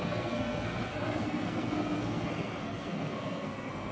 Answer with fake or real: fake